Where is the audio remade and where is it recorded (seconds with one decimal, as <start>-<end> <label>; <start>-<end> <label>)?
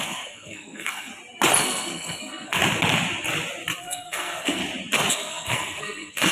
0.0-1.1 remade; 1.1-1.6 recorded; 1.6-2.6 remade; 2.6-3.8 recorded; 3.8-4.6 remade; 4.6-5.1 recorded; 5.1-6.3 remade